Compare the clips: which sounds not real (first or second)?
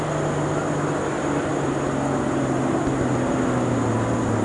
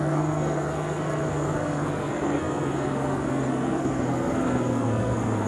second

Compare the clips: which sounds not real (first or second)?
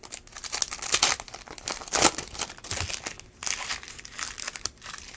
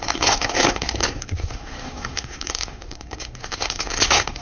second